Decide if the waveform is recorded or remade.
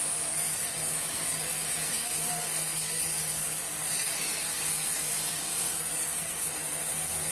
remade